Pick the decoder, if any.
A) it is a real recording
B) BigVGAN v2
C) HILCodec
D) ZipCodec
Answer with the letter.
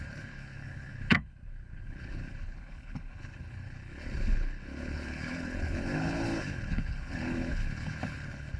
C